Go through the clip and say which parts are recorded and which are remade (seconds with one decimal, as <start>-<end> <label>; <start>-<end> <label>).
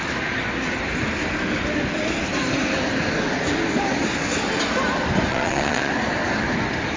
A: 0.0-5.3 recorded; 5.3-5.9 remade; 5.9-7.0 recorded